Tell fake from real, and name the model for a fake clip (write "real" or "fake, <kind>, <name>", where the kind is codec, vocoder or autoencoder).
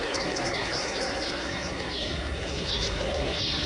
fake, codec, SNAC